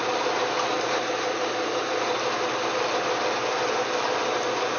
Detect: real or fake real